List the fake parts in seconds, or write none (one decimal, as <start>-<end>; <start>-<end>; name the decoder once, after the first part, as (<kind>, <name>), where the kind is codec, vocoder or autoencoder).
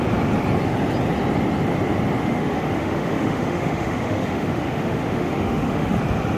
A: 2.2-6.0 (autoencoder, DAC-VAE)